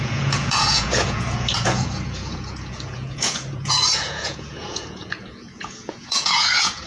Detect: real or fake fake